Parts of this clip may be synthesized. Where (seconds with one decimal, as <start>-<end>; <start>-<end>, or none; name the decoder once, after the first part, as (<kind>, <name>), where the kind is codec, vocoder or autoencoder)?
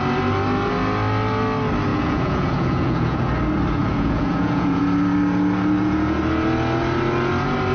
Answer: 1.9-3.3 (vocoder, Vocos); 3.8-4.8